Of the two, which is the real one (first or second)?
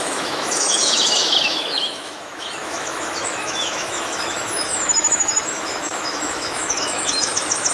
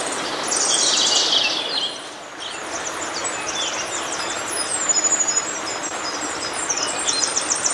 second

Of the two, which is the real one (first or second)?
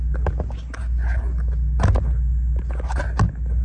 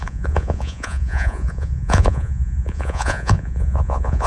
first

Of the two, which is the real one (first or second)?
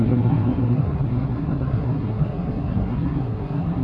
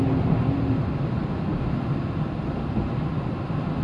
second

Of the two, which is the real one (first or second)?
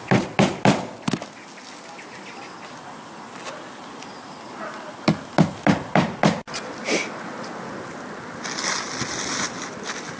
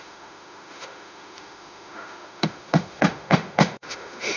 first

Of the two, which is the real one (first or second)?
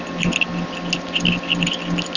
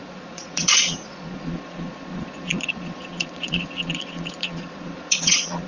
first